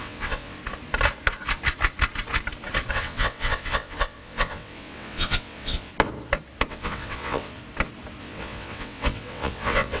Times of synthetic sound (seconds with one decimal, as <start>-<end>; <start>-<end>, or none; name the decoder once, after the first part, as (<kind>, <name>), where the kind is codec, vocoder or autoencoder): 0.0-0.6 (vocoder, WaveNeXt); 2.9-5.9; 6.7-7.6; 8.2-10.0